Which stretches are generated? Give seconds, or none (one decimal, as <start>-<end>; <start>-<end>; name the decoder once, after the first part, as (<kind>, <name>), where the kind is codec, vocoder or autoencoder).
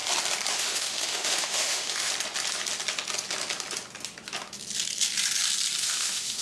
0.5-2.1 (autoencoder, DAC-VAE); 5.8-6.4